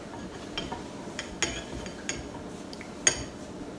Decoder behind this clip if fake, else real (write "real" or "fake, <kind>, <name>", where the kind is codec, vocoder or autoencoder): real